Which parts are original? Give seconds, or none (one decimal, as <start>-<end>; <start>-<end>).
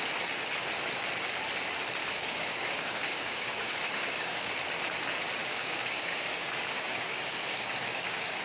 0.0-2.0; 4.5-5.4